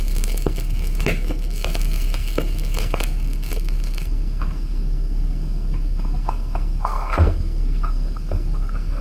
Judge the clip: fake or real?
fake